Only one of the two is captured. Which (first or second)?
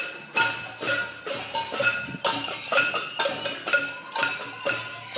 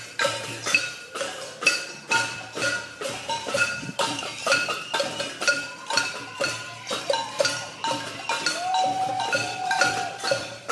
first